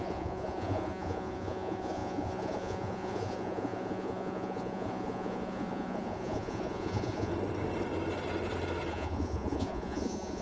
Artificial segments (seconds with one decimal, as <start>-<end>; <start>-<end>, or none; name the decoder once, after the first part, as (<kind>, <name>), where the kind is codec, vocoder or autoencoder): 0.0-7.3 (vocoder, Vocos); 8.9-10.4